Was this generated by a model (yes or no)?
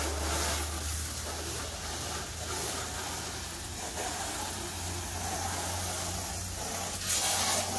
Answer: no